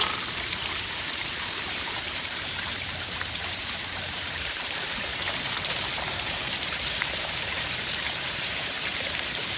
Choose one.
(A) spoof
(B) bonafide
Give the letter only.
A